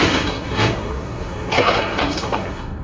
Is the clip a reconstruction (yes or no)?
yes